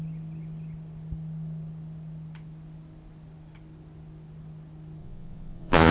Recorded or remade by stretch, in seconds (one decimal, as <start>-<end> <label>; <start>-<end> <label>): 0.0-5.0 recorded; 5.0-5.9 remade